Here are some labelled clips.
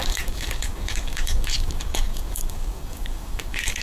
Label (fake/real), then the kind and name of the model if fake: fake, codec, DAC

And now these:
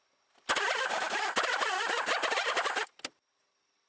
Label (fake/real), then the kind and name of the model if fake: real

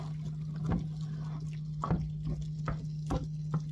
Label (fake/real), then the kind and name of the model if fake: real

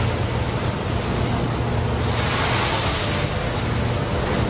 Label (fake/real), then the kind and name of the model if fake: real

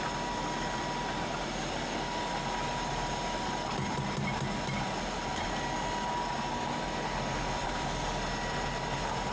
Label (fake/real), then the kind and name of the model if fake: real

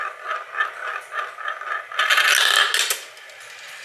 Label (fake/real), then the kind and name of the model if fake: real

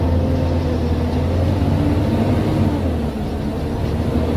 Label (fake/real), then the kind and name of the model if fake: real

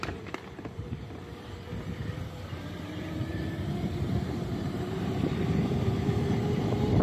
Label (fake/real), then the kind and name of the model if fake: fake, vocoder, BigVGAN v2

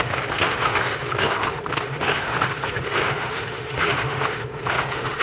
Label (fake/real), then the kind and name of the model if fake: fake, autoencoder, DAC-VAE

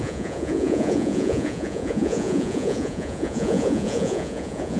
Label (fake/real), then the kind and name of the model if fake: fake, vocoder, Vocos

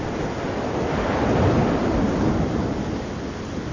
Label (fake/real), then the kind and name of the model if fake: real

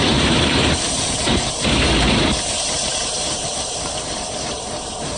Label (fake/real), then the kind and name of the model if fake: fake, vocoder, BigVGAN v2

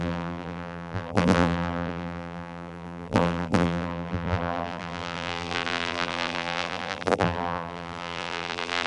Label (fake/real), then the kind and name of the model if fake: fake, vocoder, BigVGAN v2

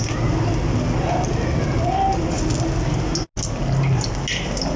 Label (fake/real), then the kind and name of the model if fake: real